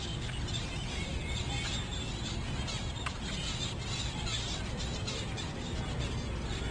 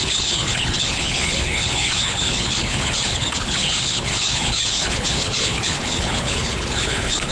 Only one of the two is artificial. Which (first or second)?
second